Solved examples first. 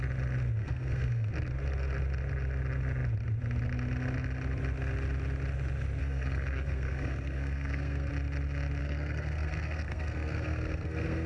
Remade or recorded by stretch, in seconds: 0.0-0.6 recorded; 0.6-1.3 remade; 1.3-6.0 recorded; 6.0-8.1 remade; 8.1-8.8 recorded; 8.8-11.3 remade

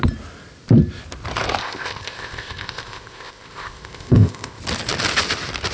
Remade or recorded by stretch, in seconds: 0.0-1.6 recorded; 1.6-4.6 remade; 4.6-5.7 recorded

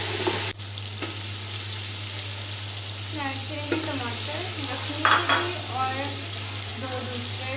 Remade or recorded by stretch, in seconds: 0.0-7.6 recorded

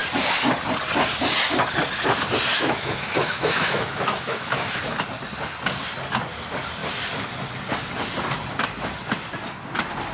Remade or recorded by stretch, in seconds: 0.0-2.5 recorded; 2.5-4.8 remade; 4.8-10.1 recorded